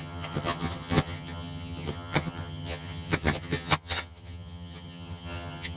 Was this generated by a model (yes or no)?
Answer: yes